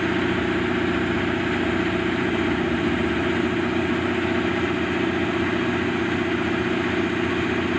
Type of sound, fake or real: real